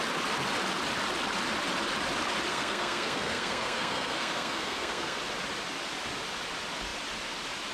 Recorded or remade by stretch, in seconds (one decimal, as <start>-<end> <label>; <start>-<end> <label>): 0.0-2.5 recorded; 2.5-5.2 remade; 5.2-7.7 recorded